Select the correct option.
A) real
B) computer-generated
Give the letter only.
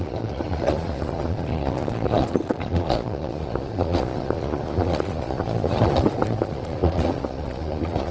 B